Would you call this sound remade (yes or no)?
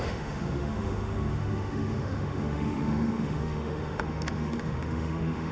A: yes